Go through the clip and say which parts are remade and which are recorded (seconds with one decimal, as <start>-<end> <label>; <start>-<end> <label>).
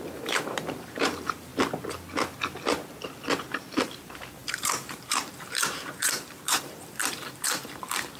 0.0-1.5 remade; 1.5-3.4 recorded; 3.4-8.2 remade